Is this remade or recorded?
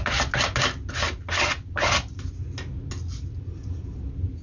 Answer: recorded